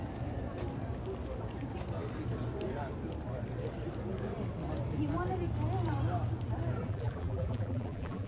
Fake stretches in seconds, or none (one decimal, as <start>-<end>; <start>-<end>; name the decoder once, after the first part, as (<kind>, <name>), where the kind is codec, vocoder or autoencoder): 6.8-8.3 (vocoder, BigVGAN v2)